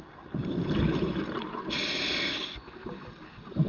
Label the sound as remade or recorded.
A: recorded